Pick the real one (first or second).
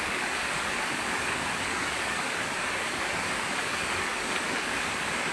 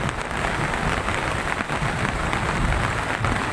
second